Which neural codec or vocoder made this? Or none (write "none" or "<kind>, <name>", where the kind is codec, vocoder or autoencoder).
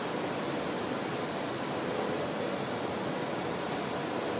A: none